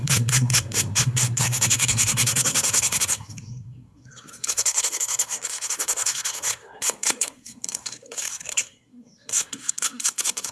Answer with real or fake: fake